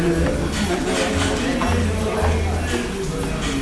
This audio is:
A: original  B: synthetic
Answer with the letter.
A